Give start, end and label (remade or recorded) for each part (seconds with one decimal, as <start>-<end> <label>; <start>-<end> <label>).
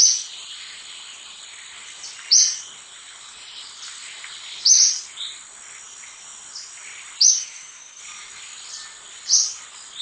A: 0.0-7.3 recorded; 7.3-8.0 remade; 8.0-10.0 recorded